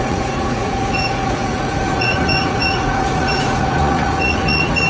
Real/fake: fake